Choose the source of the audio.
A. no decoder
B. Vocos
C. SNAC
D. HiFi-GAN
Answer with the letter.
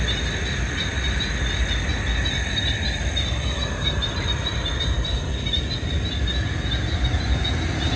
A